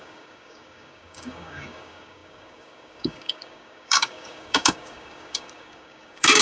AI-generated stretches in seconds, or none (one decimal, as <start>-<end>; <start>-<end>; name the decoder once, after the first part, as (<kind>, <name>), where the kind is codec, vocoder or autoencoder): 0.0-6.4 (codec, DAC)